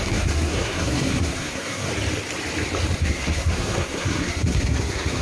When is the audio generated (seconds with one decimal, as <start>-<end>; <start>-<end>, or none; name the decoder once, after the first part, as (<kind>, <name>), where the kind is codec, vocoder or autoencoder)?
0.0-1.9 (codec, SNAC); 3.0-5.2